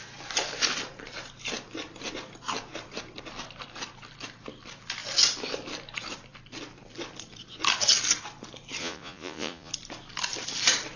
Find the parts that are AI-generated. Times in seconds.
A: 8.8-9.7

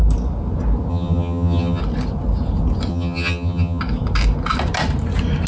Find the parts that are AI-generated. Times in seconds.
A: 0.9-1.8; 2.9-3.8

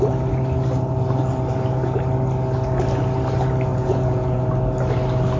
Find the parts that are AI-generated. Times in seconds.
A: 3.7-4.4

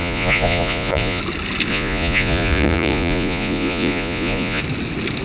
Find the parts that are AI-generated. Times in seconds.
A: 0.0-1.2; 1.7-4.6

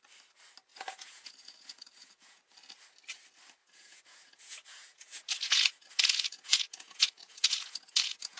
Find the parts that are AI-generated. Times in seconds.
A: 0.7-2.4; 3.6-8.4

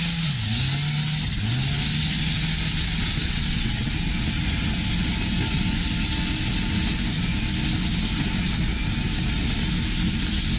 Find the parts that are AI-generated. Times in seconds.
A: 3.2-3.9

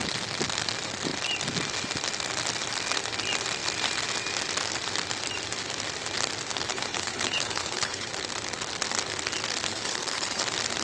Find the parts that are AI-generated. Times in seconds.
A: 6.7-8.1; 9.7-10.4

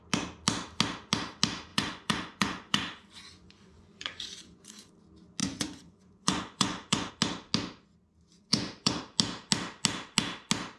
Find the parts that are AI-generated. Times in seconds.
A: 1.7-4.9; 5.4-7.1; 8.3-9.0